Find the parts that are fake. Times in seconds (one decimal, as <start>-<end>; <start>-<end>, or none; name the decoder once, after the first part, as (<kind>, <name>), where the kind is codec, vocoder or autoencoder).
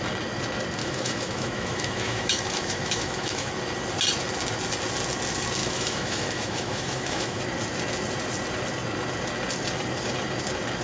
0.8-3.5 (autoencoder, DAC-VAE); 5.6-7.4